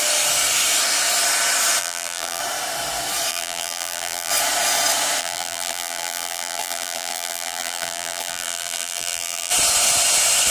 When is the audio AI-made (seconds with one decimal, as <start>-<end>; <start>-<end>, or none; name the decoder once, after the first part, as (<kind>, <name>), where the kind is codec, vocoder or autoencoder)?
1.8-2.4 (vocoder, BigVGAN v2); 3.3-4.3; 5.2-9.5